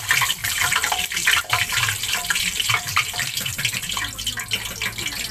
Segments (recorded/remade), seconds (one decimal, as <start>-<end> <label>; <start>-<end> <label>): 0.0-0.4 recorded; 0.4-3.6 remade; 3.6-5.3 recorded